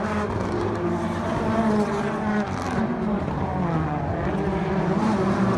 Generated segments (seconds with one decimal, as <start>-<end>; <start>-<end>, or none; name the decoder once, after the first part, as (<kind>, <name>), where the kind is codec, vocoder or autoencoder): 0.0-3.5 (vocoder, BigVGAN v2); 4.8-5.6